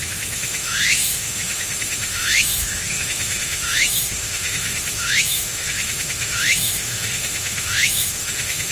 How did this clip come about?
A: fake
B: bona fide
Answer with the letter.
A